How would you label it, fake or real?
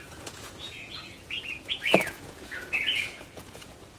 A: fake